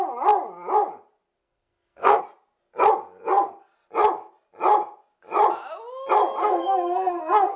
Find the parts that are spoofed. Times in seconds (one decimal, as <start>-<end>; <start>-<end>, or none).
1.4-2.2; 6.4-7.6